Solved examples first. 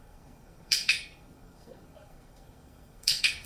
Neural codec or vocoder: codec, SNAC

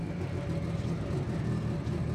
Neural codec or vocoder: none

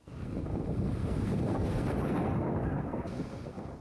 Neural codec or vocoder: codec, SNAC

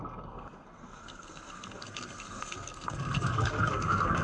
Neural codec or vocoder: codec, SNAC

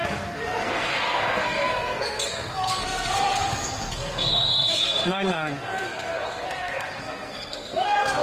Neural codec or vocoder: codec, SNAC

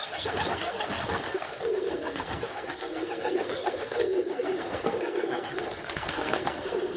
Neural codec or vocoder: codec, SNAC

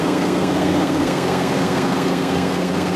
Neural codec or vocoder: codec, SNAC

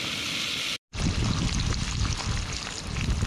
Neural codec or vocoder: none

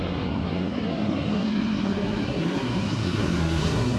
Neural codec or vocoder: codec, SNAC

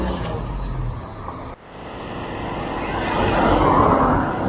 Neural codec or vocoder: none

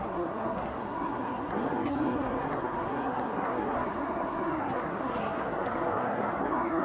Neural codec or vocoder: codec, SNAC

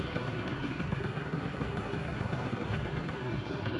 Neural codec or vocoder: codec, SNAC